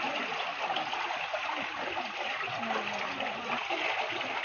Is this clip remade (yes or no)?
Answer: no